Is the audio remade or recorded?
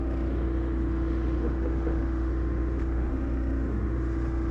remade